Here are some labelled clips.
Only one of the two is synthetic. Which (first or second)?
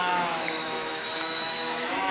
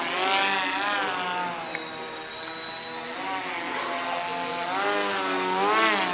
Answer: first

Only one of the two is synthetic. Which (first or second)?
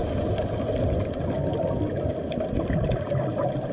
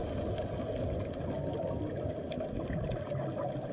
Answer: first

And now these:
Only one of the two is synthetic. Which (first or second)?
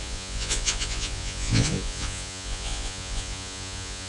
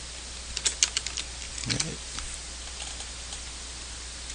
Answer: first